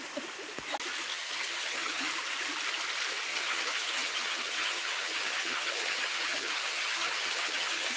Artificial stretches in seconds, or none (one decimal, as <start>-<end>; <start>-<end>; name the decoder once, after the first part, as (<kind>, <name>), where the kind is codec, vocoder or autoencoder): 1.1-2.1 (vocoder, HiFi-GAN); 3.3-8.0